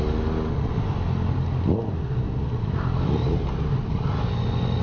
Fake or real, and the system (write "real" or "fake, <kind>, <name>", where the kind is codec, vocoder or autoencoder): real